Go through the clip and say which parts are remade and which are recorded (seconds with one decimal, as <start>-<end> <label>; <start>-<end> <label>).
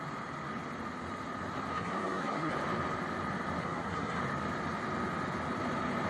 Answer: 0.0-1.7 recorded; 1.7-2.5 remade; 2.5-3.6 recorded; 3.6-4.2 remade; 4.2-6.1 recorded